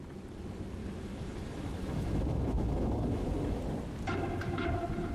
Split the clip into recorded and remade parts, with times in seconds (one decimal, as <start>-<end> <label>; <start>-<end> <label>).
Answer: 0.0-0.8 recorded; 0.8-3.6 remade; 3.6-5.1 recorded